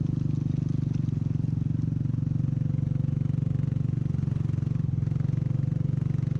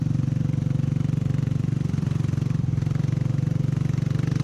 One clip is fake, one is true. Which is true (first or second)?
first